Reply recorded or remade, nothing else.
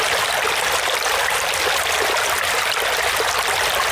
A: recorded